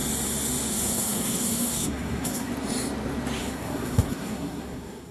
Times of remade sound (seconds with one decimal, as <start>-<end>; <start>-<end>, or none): 0.7-2.5; 3.4-5.1